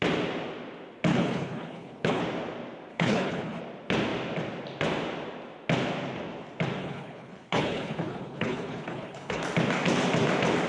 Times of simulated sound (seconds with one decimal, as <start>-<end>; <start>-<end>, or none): 1.1-2.2; 2.9-3.6; 6.8-9.4